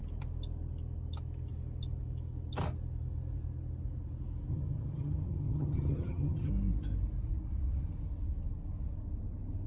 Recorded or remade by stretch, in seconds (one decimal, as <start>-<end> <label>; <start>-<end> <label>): 0.0-4.5 recorded; 4.5-6.5 remade; 6.5-9.7 recorded